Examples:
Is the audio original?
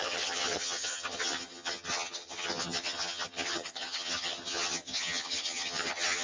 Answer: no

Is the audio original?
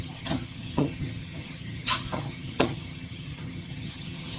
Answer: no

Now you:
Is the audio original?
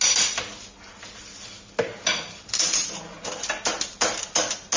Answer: yes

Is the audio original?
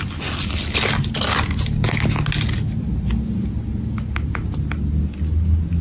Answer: yes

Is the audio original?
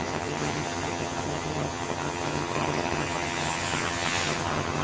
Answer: no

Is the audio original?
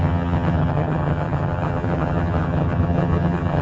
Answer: no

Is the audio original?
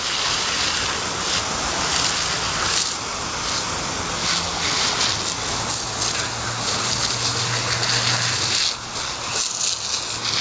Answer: yes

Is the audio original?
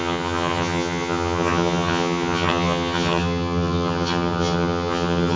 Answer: no